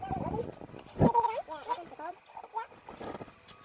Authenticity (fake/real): real